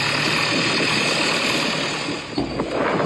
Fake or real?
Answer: real